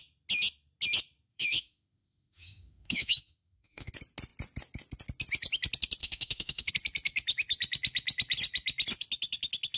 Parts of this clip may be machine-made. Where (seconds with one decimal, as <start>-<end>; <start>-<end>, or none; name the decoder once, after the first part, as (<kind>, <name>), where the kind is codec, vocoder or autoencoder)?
1.3-3.9 (autoencoder, DAC-VAE); 6.0-6.7